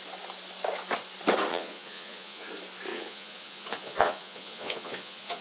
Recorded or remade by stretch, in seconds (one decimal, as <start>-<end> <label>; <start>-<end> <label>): 0.0-1.5 recorded; 1.5-2.5 remade; 2.5-2.9 recorded; 2.9-5.4 remade